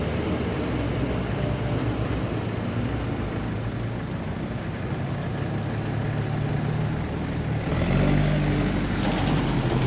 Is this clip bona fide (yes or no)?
yes